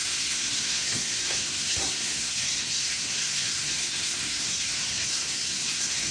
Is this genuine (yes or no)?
no